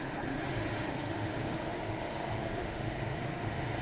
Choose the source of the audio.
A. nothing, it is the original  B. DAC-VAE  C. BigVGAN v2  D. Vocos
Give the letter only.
B